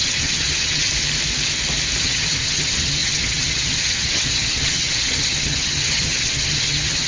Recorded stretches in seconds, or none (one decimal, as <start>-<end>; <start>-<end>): 0.9-2.0